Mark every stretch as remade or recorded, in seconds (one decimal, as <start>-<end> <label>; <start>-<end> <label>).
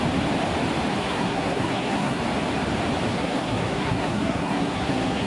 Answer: 0.0-1.0 recorded; 1.0-2.2 remade; 2.2-3.1 recorded; 3.1-5.3 remade